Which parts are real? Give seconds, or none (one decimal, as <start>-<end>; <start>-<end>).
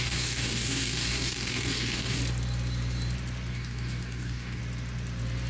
2.2-3.5; 4.6-5.5